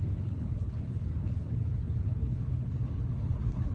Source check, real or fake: fake